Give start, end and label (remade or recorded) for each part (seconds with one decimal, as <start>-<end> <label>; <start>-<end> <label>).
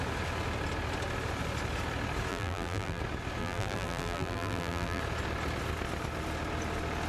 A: 0.0-2.3 recorded; 2.3-3.0 remade; 3.0-3.4 recorded; 3.4-5.0 remade; 5.0-7.1 recorded